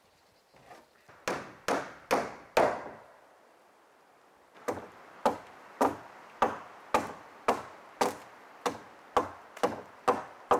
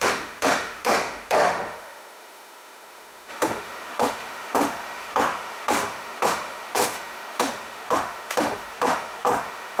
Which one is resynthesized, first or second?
second